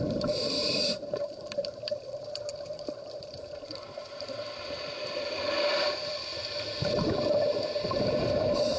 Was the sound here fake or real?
fake